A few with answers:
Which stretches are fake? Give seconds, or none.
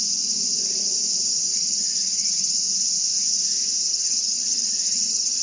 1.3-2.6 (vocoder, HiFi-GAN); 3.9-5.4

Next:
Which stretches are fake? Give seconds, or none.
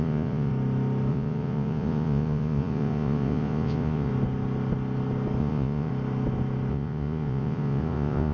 0.0-0.5 (vocoder, Vocos); 1.1-4.1; 5.4-5.9; 6.7-8.3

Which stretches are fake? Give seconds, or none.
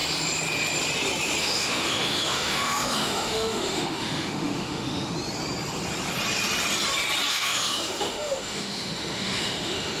1.4-5.1 (autoencoder, DAC-VAE); 7.3-10.0